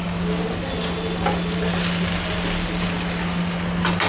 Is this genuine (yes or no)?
yes